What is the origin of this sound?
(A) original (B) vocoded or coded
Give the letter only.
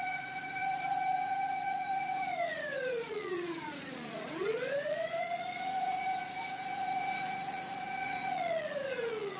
B